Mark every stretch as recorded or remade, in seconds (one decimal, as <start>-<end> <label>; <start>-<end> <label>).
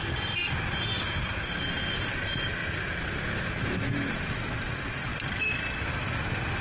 0.0-0.9 recorded; 0.9-1.7 remade; 1.7-6.6 recorded